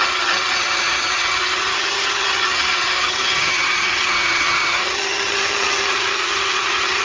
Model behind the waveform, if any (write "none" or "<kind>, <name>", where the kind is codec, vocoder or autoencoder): vocoder, HiFi-GAN